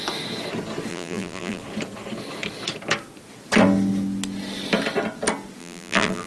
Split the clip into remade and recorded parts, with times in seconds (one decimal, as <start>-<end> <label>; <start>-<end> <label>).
0.0-0.9 recorded; 0.9-1.6 remade; 1.6-5.6 recorded; 5.6-6.3 remade